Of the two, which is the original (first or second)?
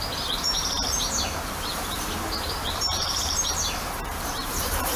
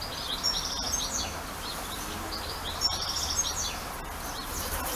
second